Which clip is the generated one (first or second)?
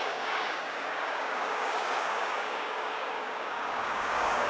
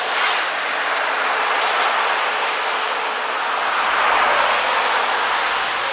first